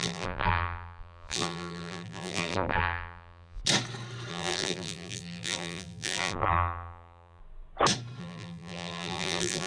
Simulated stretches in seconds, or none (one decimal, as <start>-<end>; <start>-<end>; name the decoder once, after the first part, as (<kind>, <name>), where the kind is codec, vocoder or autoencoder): 0.0-3.6 (vocoder, BigVGAN v2); 4.3-7.4; 8.2-9.7